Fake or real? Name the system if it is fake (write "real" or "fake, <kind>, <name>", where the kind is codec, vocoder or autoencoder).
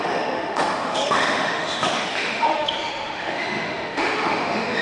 fake, autoencoder, DAC-VAE